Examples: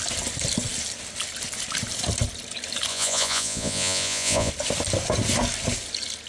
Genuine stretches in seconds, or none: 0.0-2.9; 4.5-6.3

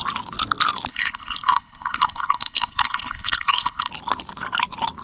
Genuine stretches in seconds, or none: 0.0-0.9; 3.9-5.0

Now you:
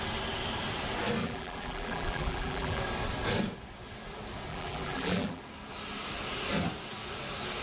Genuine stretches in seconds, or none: 0.0-1.2; 2.8-4.5; 5.4-7.6

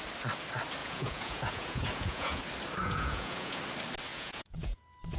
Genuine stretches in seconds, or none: 0.0-0.8; 2.4-2.8; 3.6-4.1; 4.8-5.2

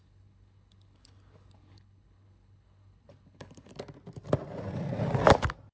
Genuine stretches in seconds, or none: 3.7-5.7